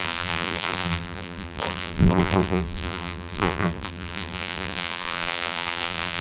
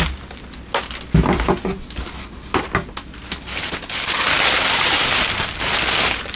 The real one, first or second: second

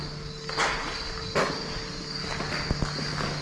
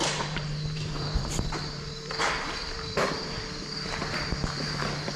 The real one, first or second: first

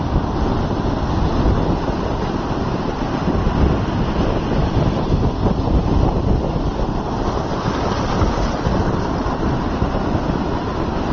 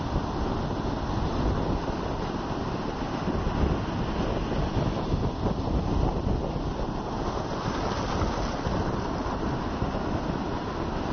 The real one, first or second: second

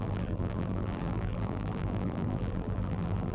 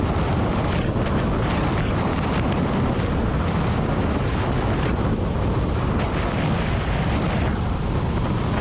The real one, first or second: second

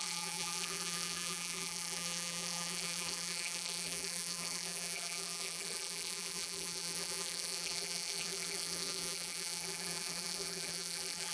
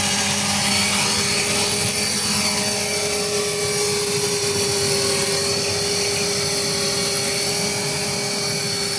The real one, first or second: second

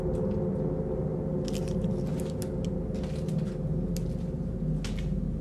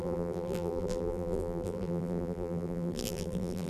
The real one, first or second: first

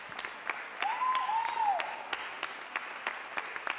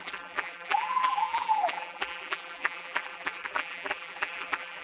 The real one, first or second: first